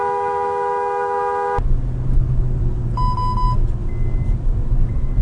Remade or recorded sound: recorded